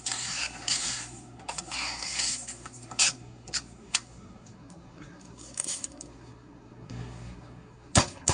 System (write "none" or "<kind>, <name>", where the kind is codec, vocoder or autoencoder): codec, SNAC